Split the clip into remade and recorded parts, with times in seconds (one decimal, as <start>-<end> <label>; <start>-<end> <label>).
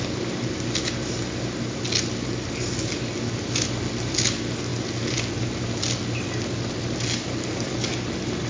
0.0-8.5 recorded